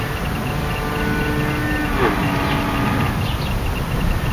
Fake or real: real